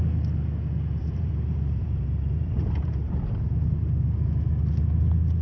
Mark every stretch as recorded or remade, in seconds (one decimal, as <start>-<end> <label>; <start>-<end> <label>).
0.0-1.0 recorded; 1.0-3.4 remade; 3.4-5.4 recorded